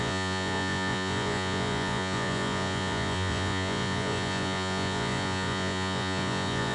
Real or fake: fake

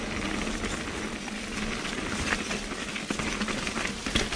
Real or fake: real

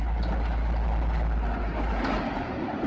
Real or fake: real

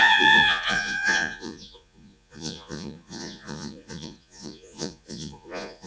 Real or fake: fake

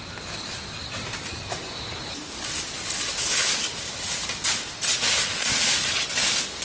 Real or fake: real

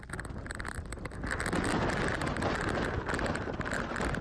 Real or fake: real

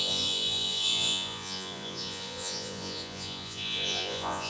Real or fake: fake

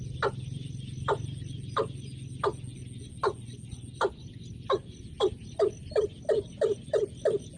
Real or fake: real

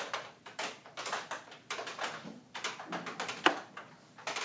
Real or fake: real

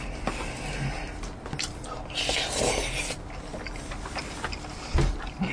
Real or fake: real